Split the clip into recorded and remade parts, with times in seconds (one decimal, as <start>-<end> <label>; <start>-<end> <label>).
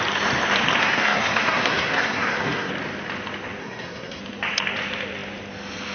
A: 0.0-0.8 recorded; 0.8-2.7 remade; 2.7-3.6 recorded; 3.6-4.2 remade; 4.2-5.9 recorded